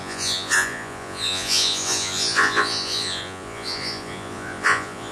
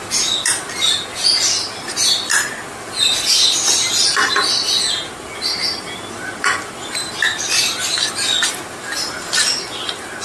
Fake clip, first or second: first